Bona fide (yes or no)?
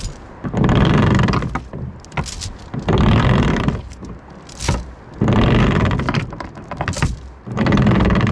yes